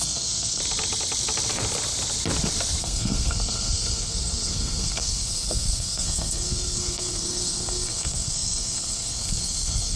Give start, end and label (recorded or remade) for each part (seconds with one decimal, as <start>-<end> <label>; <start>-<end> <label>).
0.0-0.6 remade; 0.6-2.8 recorded; 2.8-10.0 remade